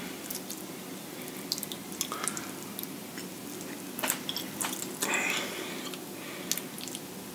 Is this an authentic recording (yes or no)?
yes